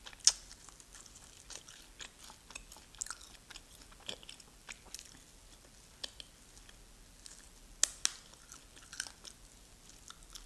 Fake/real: real